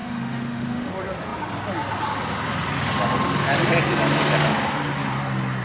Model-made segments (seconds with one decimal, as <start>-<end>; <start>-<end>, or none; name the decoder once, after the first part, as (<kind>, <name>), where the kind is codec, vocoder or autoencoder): 0.0-0.9 (autoencoder, DAC-VAE)